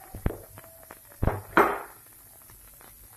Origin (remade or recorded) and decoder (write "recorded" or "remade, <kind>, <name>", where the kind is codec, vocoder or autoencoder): recorded